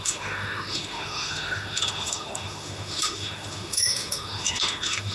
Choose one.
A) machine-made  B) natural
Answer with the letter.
A